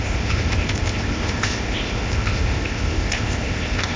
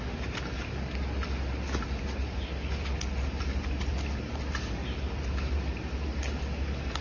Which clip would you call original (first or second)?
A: second